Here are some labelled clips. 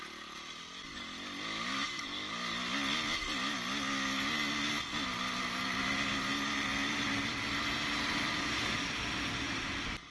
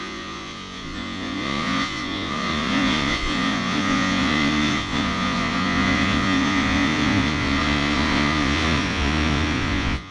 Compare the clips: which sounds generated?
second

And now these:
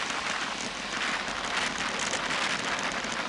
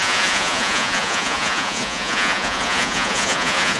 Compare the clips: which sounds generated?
second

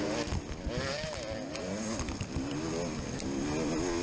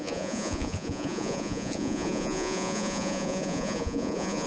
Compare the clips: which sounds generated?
second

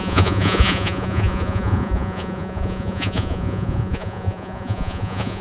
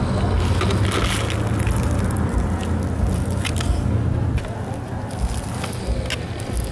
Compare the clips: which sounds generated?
first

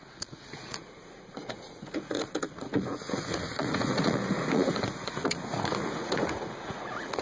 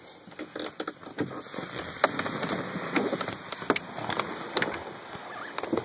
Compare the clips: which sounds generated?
first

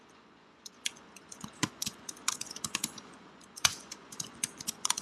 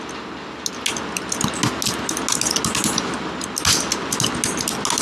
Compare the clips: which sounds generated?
first